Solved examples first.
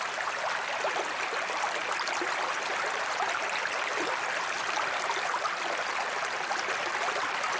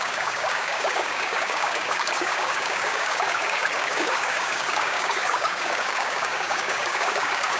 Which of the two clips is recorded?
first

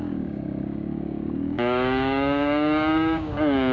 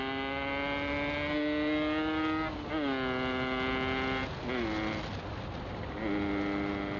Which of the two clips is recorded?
second